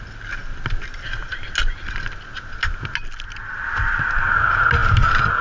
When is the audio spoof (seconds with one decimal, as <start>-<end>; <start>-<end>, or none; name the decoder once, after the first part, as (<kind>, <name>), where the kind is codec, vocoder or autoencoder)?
none